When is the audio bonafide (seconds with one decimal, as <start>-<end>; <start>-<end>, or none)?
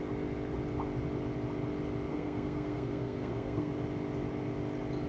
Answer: 0.0-2.1; 3.7-5.1